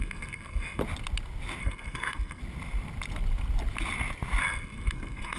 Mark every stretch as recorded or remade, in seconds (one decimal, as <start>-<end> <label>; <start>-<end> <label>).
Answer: 0.0-0.8 remade; 0.8-1.6 recorded; 1.6-2.4 remade; 2.4-4.4 recorded; 4.4-5.4 remade

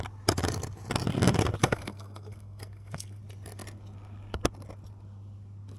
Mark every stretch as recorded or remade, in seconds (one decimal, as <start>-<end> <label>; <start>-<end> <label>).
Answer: 0.0-1.6 recorded; 1.6-3.2 remade; 3.2-5.8 recorded

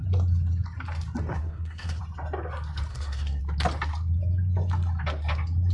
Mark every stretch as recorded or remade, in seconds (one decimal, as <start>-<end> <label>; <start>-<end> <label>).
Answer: 0.0-1.3 recorded; 1.3-2.0 remade; 2.0-2.9 recorded; 2.9-3.4 remade; 3.4-5.7 recorded

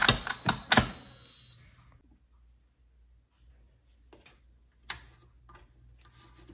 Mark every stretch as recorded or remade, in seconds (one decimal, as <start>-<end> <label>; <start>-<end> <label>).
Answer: 0.0-6.5 recorded

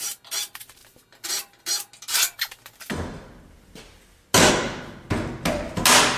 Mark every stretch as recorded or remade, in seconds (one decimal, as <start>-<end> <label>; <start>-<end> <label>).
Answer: 0.0-6.2 recorded

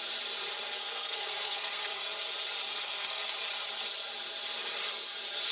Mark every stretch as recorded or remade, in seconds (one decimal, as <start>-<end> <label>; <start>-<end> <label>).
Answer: 0.0-0.7 recorded; 0.7-2.1 remade; 2.1-2.7 recorded; 2.7-3.3 remade; 3.3-5.5 recorded

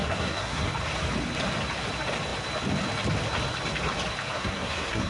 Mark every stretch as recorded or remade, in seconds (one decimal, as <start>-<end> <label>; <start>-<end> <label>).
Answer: 0.0-0.7 remade; 0.7-4.3 recorded; 4.3-5.1 remade